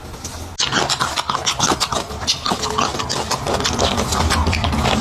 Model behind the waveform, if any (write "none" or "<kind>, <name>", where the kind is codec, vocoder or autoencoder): none